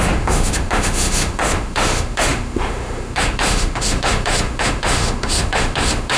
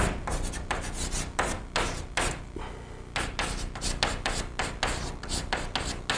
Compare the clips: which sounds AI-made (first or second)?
first